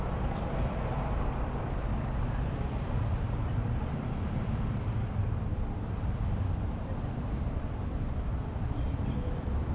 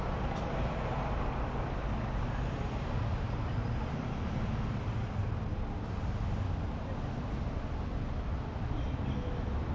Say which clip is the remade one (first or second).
first